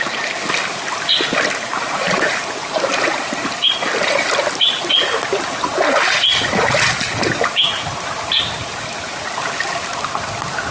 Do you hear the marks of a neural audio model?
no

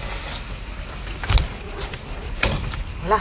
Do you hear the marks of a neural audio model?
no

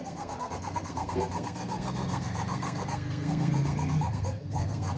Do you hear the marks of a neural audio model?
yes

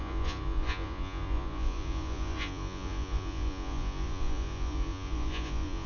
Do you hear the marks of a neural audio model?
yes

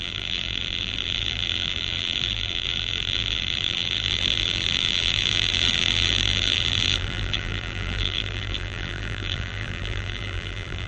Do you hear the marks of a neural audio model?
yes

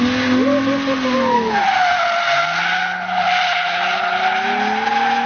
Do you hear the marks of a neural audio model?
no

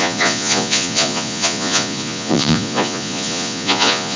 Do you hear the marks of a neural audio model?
yes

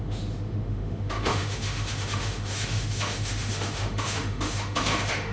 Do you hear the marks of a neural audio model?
yes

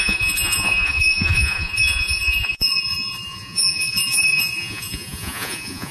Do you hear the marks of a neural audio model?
yes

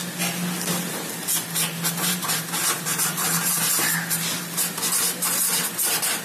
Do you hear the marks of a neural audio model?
no